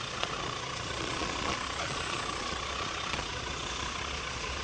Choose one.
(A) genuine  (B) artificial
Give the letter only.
B